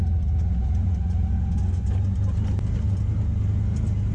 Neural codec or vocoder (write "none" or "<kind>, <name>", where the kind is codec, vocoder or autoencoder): none